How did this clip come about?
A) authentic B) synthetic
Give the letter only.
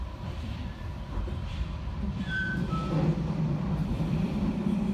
B